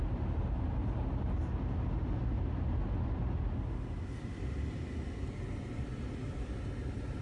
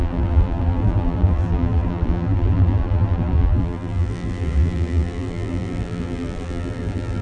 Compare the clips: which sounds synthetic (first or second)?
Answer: second